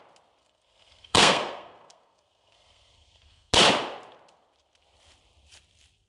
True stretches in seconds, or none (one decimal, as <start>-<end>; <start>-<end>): 0.0-0.4; 3.5-6.1